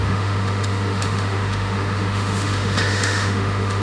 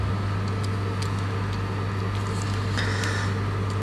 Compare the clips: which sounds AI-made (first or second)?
first